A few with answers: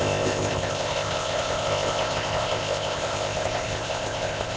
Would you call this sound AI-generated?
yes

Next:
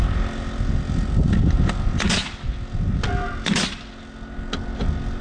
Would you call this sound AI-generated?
no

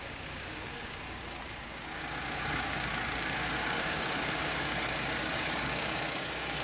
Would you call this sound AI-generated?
yes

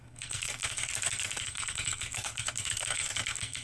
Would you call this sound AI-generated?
yes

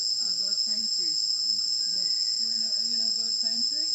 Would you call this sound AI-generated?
yes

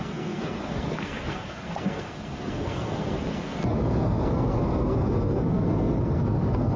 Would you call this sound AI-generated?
yes